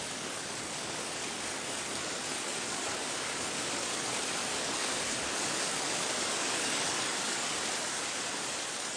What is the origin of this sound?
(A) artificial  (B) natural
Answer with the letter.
A